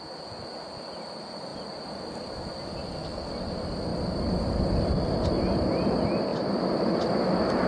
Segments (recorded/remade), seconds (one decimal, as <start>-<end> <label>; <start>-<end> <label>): 0.0-3.9 recorded; 3.9-4.5 remade; 4.5-6.3 recorded; 6.3-7.2 remade; 7.2-7.7 recorded